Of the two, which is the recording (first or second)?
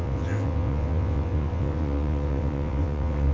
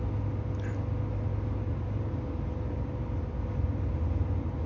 second